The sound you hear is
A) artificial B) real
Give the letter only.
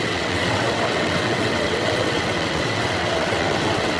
A